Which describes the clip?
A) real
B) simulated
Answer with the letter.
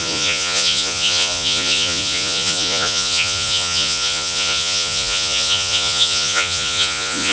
B